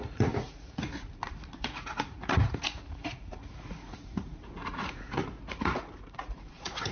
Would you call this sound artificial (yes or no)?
yes